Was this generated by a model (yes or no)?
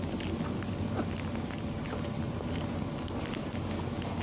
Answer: no